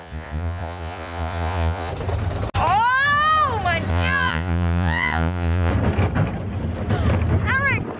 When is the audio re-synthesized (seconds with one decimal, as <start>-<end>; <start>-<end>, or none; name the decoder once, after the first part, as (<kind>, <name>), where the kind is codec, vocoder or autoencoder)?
0.0-1.9 (vocoder, Vocos); 3.9-5.7